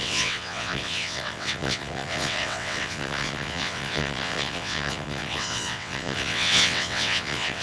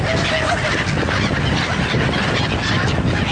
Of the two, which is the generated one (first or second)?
first